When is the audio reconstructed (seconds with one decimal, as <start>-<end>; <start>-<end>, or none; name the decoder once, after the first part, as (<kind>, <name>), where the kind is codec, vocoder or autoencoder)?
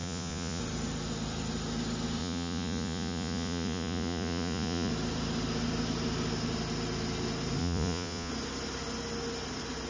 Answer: 0.0-0.6 (vocoder, Vocos); 2.2-4.9; 7.6-8.3